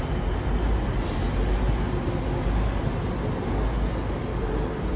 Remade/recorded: recorded